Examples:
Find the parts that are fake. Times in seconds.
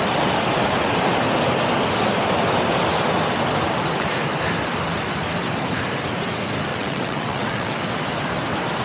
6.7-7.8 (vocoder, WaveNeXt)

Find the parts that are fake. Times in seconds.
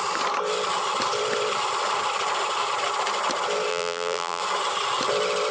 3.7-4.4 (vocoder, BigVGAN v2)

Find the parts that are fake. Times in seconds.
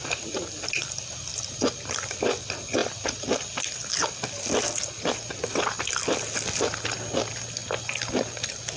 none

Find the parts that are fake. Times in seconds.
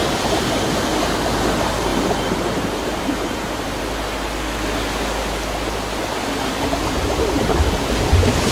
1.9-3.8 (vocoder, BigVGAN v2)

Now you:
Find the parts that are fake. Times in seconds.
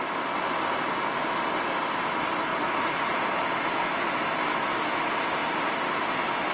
2.5-3.3 (vocoder, Vocos)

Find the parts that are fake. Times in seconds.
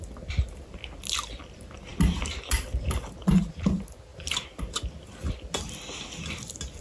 none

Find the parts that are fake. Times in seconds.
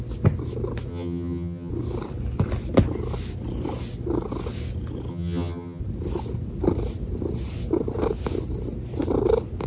0.9-1.7 (vocoder, HiFi-GAN); 5.1-5.8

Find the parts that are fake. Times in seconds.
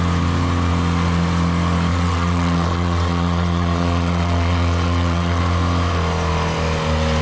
1.9-5.4 (vocoder, WaveNeXt)